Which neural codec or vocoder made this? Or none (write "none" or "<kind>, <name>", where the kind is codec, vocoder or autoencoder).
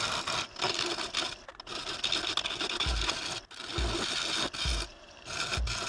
none